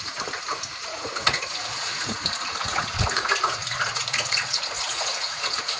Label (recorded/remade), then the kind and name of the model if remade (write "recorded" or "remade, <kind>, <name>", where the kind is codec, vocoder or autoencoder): remade, vocoder, Vocos